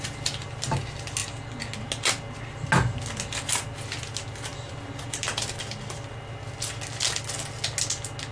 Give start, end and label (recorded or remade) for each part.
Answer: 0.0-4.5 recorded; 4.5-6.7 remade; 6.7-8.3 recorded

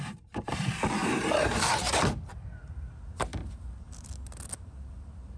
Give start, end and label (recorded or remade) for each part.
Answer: 0.0-1.0 recorded; 1.0-1.7 remade; 1.7-3.3 recorded; 3.3-3.9 remade; 3.9-5.4 recorded

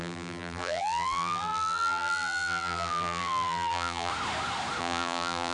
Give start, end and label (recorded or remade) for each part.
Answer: 0.0-4.1 remade; 4.1-4.8 recorded; 4.8-5.5 remade